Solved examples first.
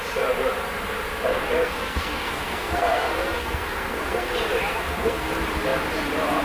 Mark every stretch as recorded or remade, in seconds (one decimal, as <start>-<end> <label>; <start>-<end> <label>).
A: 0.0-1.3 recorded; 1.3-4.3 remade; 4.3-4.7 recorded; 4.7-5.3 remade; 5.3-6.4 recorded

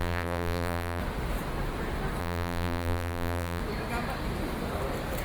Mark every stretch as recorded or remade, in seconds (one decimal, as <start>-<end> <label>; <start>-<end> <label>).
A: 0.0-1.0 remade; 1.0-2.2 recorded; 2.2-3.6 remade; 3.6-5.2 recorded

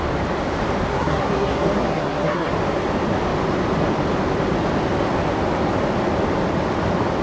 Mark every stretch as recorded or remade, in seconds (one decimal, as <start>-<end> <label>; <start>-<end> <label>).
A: 0.0-0.9 recorded; 0.9-2.5 remade; 2.5-7.2 recorded